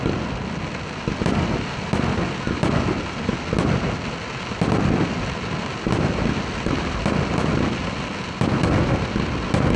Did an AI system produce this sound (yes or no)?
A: no